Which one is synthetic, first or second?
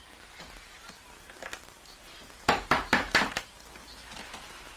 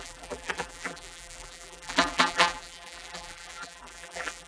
second